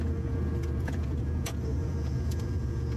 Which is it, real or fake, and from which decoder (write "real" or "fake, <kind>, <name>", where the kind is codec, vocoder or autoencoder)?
fake, vocoder, Vocos